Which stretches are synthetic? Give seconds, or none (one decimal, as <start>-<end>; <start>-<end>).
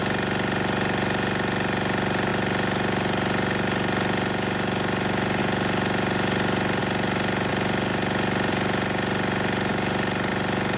none